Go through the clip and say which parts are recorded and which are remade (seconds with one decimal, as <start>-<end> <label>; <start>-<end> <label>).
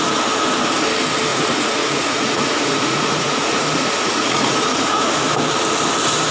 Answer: 0.0-1.3 recorded; 1.3-5.1 remade; 5.1-6.3 recorded